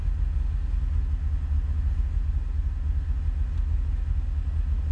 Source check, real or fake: real